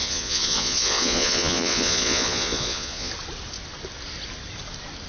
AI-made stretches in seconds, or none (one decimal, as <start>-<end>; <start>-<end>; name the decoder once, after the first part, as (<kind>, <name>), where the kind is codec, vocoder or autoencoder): 0.0-3.1 (vocoder, Vocos)